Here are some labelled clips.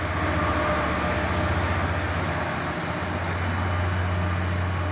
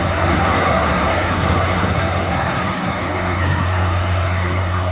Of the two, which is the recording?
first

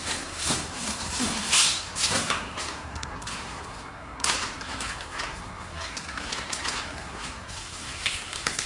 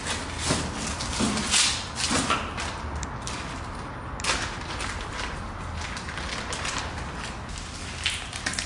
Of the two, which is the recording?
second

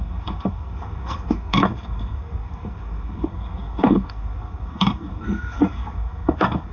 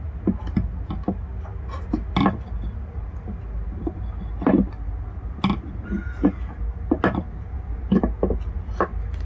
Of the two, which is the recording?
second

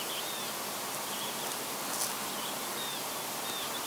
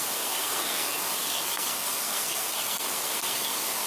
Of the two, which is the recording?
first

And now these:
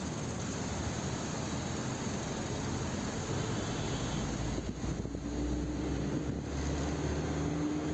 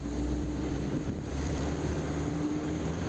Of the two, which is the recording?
first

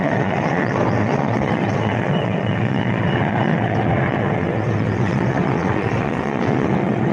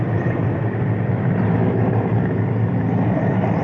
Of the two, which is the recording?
second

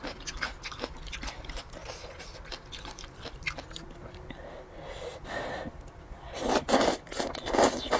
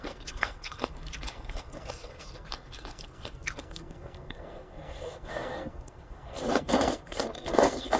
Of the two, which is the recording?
first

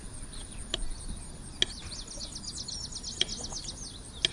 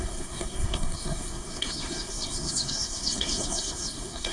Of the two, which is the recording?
first